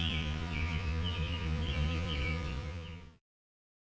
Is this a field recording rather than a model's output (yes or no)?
no